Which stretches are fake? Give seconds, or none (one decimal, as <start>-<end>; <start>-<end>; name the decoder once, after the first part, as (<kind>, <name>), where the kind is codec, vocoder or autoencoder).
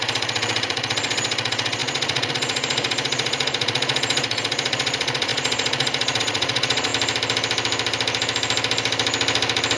0.0-6.9 (vocoder, Vocos)